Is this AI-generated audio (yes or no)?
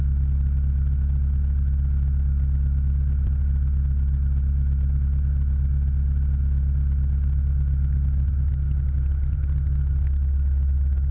no